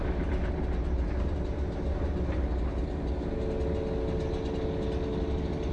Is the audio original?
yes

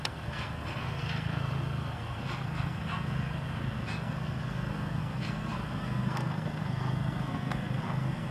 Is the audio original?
no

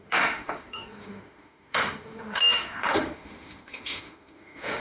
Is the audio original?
no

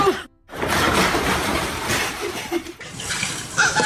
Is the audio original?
no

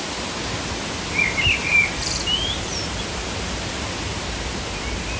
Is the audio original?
yes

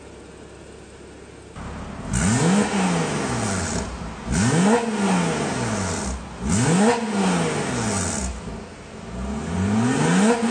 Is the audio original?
yes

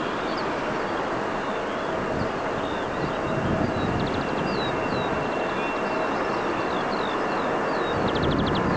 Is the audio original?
yes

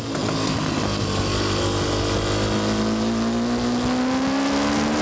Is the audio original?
yes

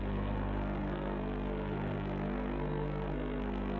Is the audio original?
no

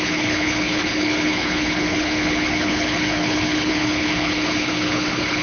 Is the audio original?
no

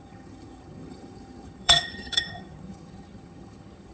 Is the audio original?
no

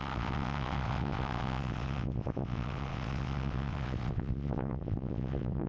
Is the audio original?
no